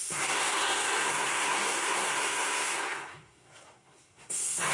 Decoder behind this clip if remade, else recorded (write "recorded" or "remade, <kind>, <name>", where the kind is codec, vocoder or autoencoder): remade, codec, SNAC